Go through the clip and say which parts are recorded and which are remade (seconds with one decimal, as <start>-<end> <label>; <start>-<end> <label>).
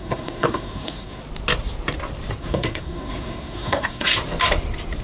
0.0-1.2 remade; 1.2-2.4 recorded; 2.4-4.1 remade; 4.1-5.0 recorded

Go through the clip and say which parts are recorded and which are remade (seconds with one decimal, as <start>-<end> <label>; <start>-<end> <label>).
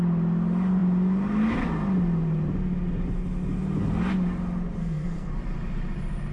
0.0-4.8 recorded; 4.8-5.3 remade; 5.3-6.3 recorded